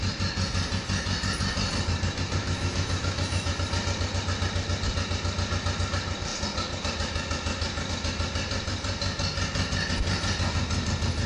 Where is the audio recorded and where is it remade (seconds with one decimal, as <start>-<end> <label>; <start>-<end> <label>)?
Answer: 0.0-2.4 recorded; 2.4-3.5 remade; 3.5-11.3 recorded